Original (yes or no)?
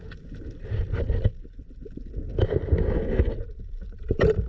yes